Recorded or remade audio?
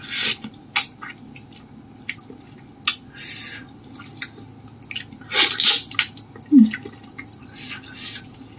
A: recorded